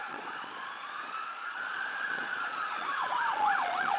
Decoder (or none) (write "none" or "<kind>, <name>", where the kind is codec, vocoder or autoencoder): vocoder, Vocos